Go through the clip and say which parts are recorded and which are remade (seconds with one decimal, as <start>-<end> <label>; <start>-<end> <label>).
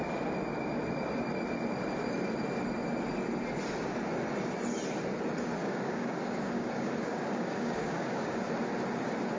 0.0-5.6 recorded; 5.6-8.4 remade; 8.4-9.4 recorded